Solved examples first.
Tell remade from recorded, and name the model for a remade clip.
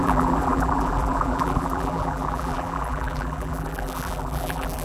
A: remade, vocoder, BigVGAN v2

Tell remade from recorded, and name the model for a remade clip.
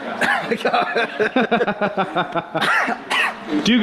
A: recorded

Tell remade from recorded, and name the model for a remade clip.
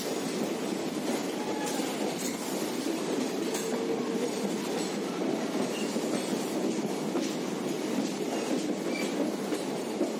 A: recorded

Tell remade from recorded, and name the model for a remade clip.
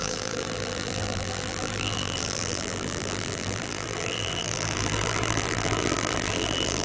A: remade, vocoder, BigVGAN v2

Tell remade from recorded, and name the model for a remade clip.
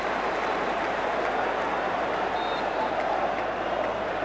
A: remade, vocoder, BigVGAN v2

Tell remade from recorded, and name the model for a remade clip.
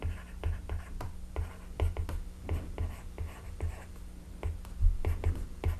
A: recorded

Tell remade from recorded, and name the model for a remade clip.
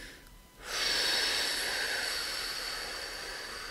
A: remade, vocoder, BigVGAN v2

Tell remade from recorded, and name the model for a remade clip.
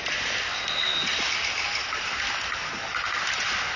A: recorded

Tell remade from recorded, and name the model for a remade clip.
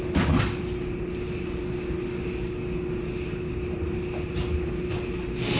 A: recorded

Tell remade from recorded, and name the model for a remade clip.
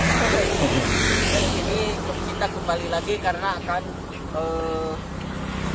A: recorded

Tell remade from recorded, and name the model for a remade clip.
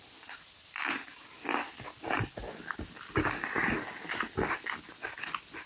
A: recorded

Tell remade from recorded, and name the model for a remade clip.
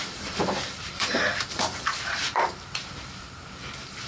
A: remade, vocoder, BigVGAN v2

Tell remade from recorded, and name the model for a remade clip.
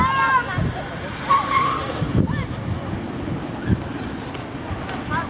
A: recorded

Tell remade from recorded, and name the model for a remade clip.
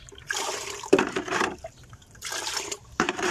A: remade, vocoder, BigVGAN v2